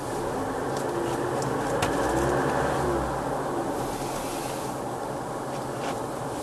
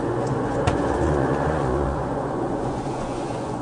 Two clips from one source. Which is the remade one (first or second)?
second